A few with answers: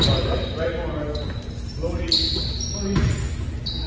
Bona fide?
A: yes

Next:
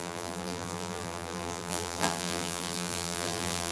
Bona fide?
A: no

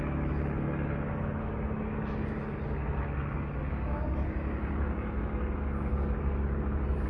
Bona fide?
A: yes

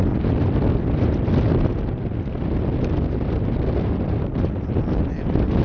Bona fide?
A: yes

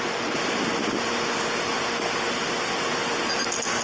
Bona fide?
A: yes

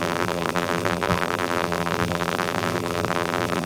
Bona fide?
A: no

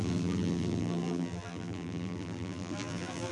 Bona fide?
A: no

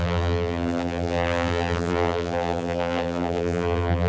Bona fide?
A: no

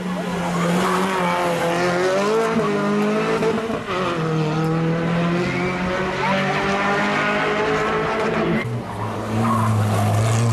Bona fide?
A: yes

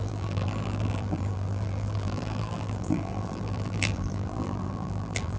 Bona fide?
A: no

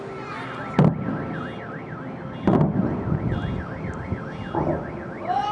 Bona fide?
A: yes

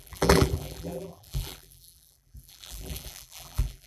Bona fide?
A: no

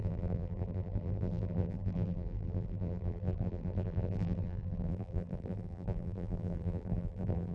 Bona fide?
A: no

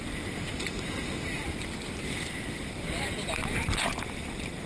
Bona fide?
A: no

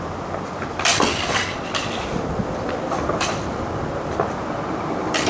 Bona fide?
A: no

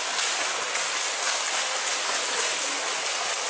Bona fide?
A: yes